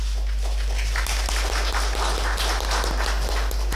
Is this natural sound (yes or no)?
yes